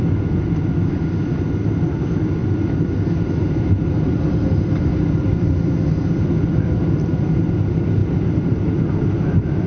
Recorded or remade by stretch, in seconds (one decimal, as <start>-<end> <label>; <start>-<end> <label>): 0.0-9.7 recorded

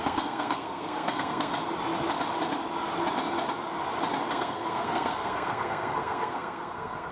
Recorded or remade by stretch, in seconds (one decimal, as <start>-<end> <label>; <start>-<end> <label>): 0.0-1.5 remade; 1.5-4.3 recorded; 4.3-7.1 remade

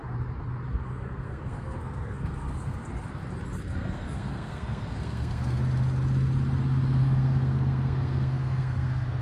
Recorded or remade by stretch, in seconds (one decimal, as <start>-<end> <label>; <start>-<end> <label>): 0.0-0.7 recorded; 0.7-2.8 remade; 2.8-3.6 recorded; 3.6-5.6 remade; 5.6-7.0 recorded; 7.0-9.2 remade

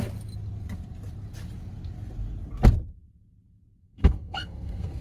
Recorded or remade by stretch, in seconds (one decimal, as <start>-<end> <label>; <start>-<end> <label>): 0.0-3.8 recorded; 3.8-5.0 remade

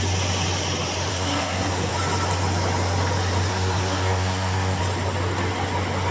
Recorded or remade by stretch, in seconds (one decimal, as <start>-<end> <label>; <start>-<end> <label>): 0.0-1.1 recorded; 1.1-1.9 remade; 1.9-3.5 recorded; 3.5-4.8 remade; 4.8-6.1 recorded

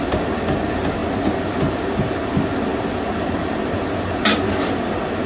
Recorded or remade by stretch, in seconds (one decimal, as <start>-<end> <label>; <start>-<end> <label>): 0.0-5.3 recorded

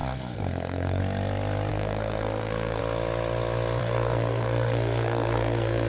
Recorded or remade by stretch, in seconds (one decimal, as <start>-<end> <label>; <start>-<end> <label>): 0.0-1.0 remade; 1.0-1.7 recorded; 1.7-2.8 remade; 2.8-3.8 recorded; 3.8-5.9 remade